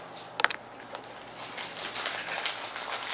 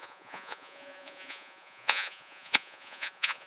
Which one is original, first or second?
first